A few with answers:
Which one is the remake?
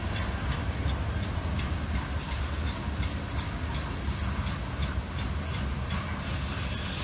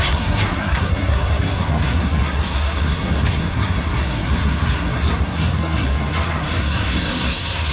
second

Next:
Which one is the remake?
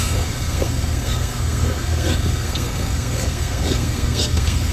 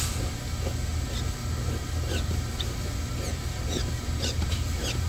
first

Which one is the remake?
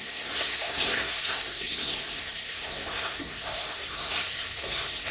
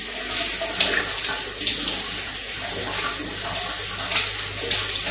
first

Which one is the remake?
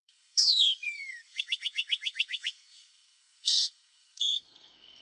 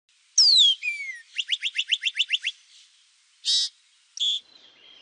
first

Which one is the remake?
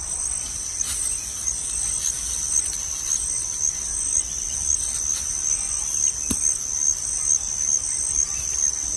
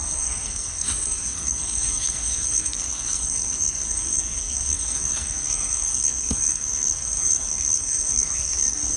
second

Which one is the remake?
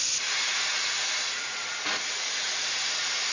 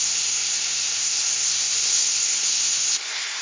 second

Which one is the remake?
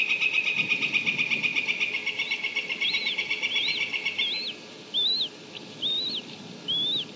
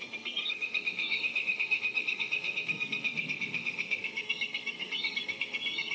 second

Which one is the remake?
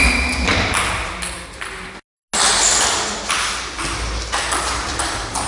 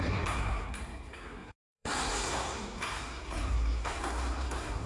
second